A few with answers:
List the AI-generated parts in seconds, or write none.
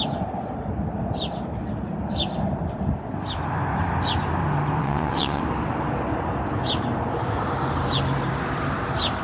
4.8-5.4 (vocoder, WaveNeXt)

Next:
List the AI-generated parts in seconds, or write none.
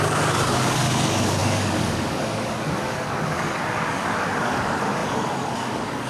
0.0-6.1 (codec, DAC)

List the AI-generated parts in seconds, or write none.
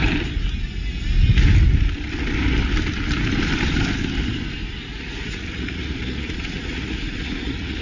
4.9-7.8 (vocoder, Vocos)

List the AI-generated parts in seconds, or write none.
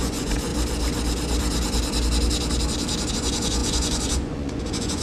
0.0-0.5 (vocoder, Vocos); 3.1-5.0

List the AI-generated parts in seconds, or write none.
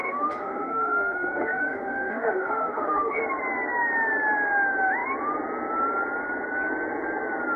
0.0-3.2 (autoencoder, DAC-VAE)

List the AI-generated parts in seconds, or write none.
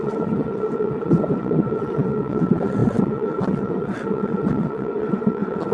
0.0-5.7 (vocoder, WaveNeXt)